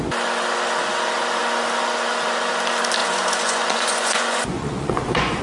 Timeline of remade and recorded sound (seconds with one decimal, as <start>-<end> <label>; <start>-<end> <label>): 0.0-3.0 recorded; 3.0-5.4 remade